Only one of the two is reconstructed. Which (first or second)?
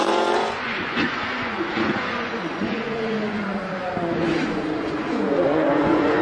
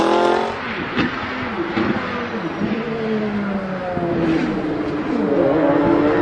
first